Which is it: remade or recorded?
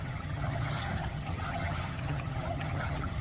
remade